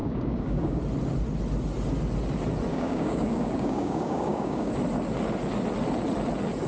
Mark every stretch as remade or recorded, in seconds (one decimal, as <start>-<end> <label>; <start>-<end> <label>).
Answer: 0.0-0.8 remade; 0.8-2.7 recorded; 2.7-4.7 remade; 4.7-6.7 recorded